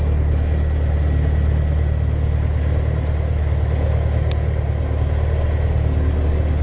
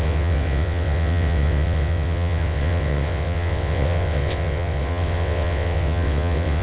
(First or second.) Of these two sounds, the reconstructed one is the second